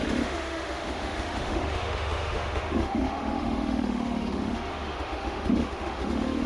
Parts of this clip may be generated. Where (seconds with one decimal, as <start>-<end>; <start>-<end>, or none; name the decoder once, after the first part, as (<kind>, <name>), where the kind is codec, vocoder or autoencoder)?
0.0-6.5 (autoencoder, DAC-VAE)